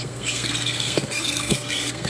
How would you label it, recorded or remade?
remade